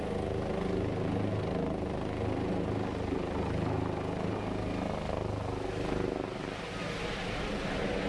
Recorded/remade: recorded